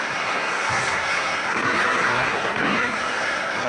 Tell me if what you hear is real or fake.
fake